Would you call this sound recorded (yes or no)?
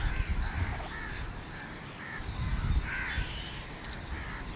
yes